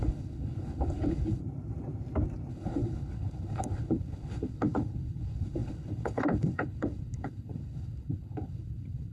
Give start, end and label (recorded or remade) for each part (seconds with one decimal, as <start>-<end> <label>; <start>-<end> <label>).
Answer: 0.0-1.4 remade; 1.4-2.5 recorded; 2.5-9.1 remade